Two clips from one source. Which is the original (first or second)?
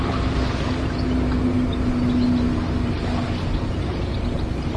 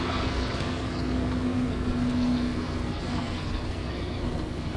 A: first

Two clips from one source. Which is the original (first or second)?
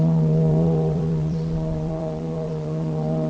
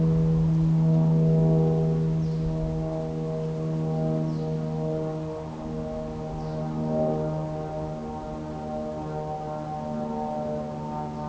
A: second